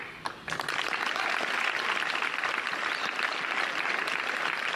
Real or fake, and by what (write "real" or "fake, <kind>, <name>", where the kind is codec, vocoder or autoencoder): real